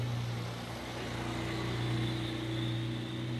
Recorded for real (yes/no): yes